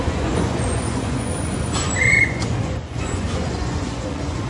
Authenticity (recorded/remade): remade